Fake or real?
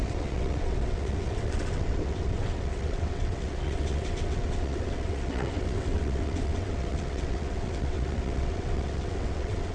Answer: fake